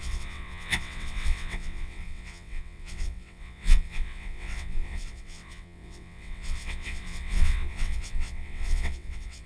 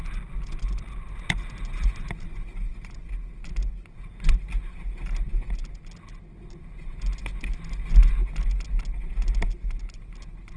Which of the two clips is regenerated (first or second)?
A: first